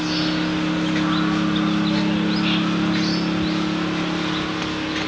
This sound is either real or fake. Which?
real